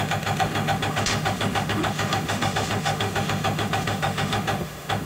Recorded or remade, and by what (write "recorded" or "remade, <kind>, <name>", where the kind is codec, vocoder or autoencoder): remade, autoencoder, DAC-VAE